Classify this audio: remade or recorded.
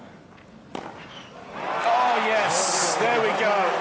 recorded